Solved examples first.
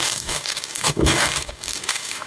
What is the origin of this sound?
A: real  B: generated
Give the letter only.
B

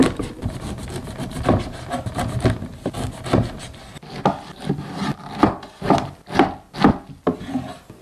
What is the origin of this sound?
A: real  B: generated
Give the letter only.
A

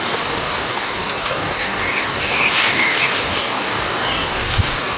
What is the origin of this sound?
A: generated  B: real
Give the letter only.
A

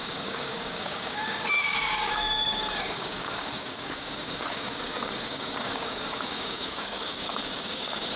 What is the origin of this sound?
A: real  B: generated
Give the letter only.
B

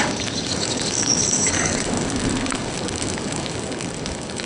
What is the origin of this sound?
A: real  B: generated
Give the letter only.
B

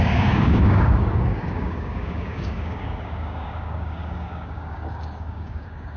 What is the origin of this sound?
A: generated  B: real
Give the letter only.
A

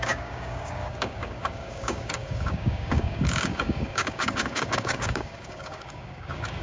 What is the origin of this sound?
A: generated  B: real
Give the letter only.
A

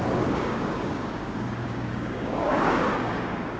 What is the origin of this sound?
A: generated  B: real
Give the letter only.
A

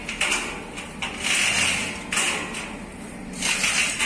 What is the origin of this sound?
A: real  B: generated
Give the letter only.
A